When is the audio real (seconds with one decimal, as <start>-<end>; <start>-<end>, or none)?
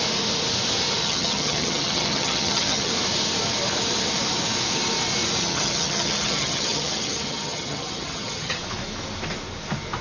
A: 0.0-1.0; 2.9-5.4; 8.6-10.0